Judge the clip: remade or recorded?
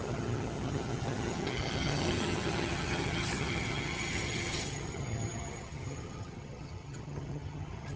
remade